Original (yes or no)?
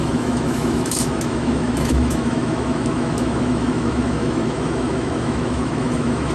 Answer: no